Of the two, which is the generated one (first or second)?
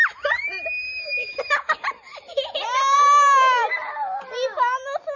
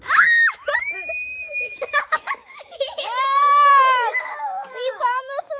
second